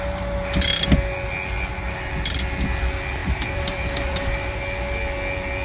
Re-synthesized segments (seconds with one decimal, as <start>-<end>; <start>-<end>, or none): 3.2-4.6